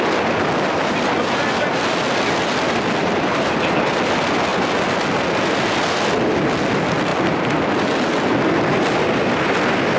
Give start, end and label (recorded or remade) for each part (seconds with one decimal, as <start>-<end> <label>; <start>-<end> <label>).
0.0-10.0 recorded